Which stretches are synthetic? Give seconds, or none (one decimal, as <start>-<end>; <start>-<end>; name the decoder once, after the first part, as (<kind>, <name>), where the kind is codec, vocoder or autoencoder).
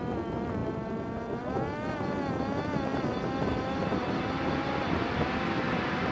none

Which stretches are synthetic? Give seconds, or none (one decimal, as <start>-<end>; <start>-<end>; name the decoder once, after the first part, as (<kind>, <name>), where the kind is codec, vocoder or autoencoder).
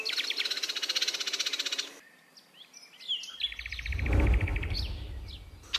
4.5-5.2 (vocoder, BigVGAN v2)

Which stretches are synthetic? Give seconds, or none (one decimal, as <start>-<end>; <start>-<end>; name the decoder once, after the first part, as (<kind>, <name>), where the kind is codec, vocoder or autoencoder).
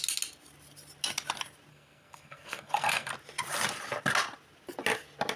1.7-3.1 (codec, SNAC)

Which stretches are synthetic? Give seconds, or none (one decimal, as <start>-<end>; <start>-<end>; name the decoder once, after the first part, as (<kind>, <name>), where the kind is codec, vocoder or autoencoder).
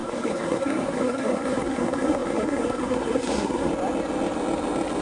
0.0-3.7 (codec, SNAC)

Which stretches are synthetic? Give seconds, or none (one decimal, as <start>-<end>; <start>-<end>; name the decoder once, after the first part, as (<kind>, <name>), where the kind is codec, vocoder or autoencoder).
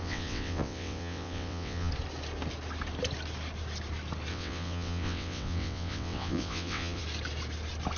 0.0-1.9 (vocoder, WaveNeXt); 4.3-7.0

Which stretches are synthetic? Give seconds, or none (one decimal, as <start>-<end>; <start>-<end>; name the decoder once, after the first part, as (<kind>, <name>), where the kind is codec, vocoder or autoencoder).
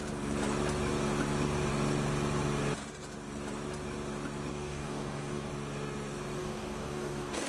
4.5-5.5 (codec, DAC); 6.4-7.5